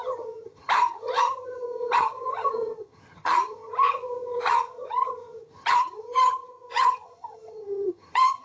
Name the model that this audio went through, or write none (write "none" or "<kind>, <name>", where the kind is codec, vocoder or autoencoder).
vocoder, HiFi-GAN